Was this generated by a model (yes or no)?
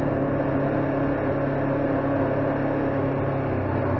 no